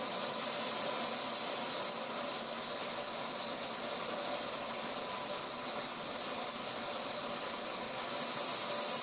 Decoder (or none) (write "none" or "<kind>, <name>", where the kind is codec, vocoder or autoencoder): none